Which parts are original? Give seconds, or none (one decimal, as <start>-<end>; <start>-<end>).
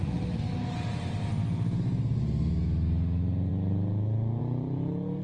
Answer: 0.0-5.2